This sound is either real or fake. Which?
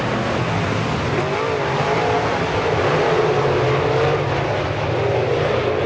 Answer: real